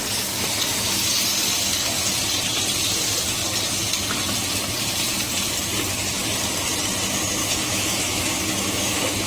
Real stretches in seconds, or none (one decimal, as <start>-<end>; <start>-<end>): 0.0-7.4